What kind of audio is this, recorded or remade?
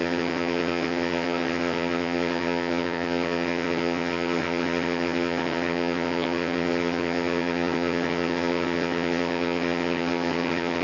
remade